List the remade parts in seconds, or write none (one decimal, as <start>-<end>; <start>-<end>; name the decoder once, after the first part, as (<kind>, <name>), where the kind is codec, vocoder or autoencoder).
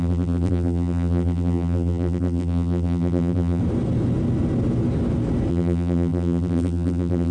0.0-3.6 (vocoder, BigVGAN v2); 5.5-7.3